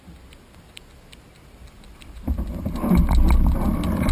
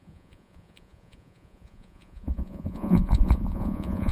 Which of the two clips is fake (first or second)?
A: second